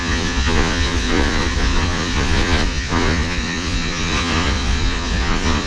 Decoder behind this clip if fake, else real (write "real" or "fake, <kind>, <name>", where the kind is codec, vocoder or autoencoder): fake, vocoder, Vocos